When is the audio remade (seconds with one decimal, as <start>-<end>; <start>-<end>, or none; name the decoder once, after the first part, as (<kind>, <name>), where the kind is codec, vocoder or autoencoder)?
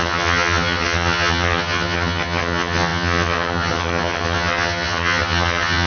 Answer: 0.0-5.9 (vocoder, HiFi-GAN)